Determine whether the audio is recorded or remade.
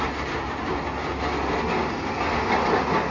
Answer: recorded